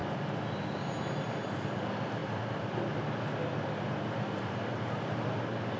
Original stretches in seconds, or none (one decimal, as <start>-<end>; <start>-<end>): 0.0-5.8